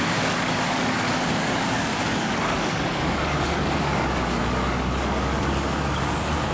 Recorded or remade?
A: remade